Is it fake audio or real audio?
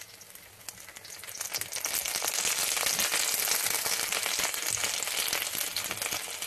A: real